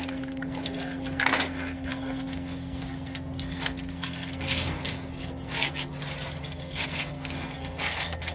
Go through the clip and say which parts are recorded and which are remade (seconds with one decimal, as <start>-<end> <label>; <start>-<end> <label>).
0.0-5.9 remade; 5.9-6.4 recorded; 6.4-8.3 remade